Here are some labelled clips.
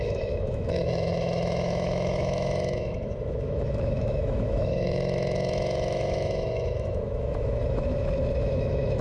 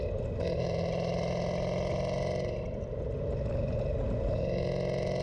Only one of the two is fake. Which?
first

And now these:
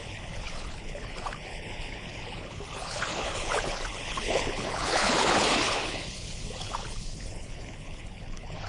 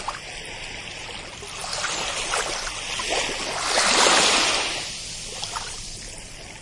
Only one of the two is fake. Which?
first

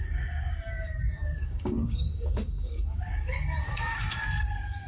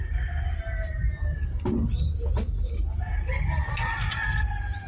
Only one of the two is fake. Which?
first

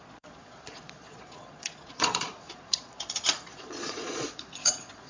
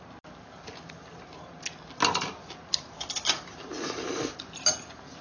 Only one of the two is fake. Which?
first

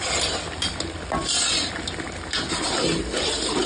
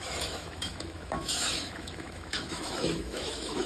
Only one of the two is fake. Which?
second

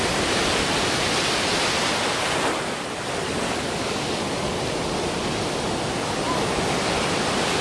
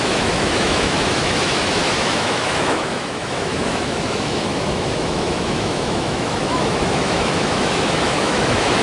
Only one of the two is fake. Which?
second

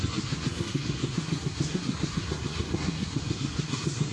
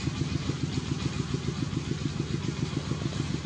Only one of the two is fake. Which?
first